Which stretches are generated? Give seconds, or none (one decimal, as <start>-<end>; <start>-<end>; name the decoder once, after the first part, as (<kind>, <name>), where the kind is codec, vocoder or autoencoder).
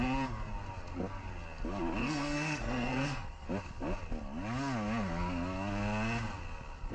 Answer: 2.0-3.5 (codec, SNAC)